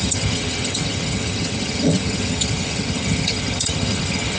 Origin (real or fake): fake